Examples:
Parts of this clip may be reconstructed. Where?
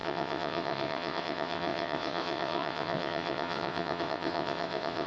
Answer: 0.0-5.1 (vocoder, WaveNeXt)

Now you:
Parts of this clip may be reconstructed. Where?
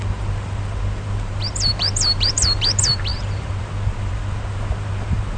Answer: 0.0-5.4 (vocoder, BigVGAN v2)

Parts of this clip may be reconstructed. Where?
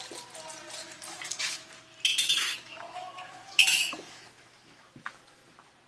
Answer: 0.8-1.7 (autoencoder, DAC-VAE); 2.1-5.2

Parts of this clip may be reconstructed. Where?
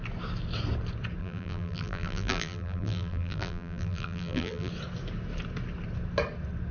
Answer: 1.2-4.7 (vocoder, BigVGAN v2)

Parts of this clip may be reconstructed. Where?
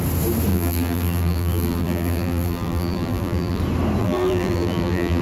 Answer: 0.5-3.6 (vocoder, BigVGAN v2); 4.0-5.2